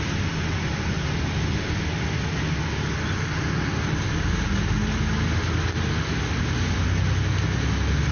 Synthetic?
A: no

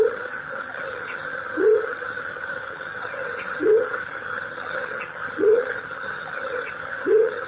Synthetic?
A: yes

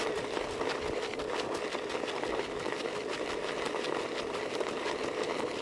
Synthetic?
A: no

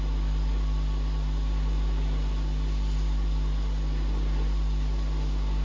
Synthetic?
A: no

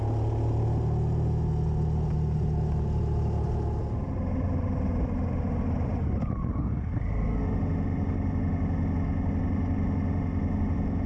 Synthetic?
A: no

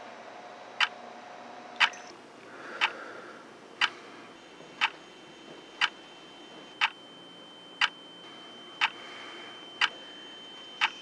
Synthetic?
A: no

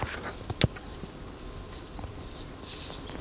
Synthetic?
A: no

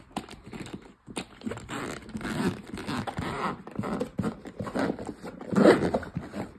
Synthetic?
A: no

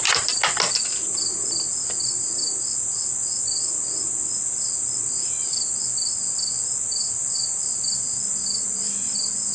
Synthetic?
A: no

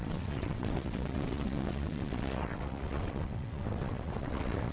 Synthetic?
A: yes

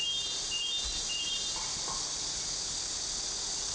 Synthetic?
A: no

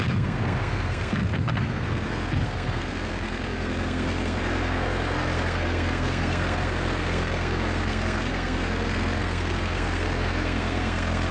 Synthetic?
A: yes